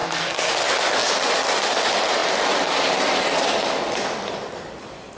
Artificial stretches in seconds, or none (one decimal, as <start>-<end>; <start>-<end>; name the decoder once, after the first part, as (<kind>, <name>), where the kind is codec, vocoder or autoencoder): 0.0-0.5 (codec, SNAC)